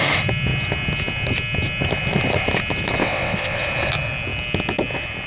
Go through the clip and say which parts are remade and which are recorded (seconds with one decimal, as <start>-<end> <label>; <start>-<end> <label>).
0.0-3.0 recorded; 3.0-3.6 remade; 3.6-5.3 recorded